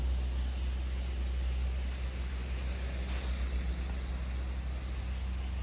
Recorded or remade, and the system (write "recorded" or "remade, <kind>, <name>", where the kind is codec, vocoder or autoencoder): recorded